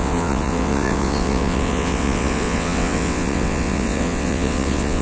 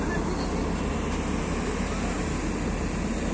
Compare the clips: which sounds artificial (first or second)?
first